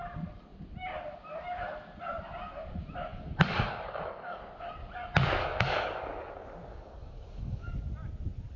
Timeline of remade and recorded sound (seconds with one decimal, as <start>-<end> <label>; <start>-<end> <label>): 0.0-3.1 recorded; 3.1-4.4 remade; 4.4-5.4 recorded; 5.4-6.3 remade; 6.3-6.7 recorded; 6.7-7.7 remade; 7.7-8.6 recorded